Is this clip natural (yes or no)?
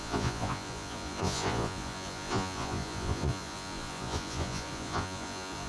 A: no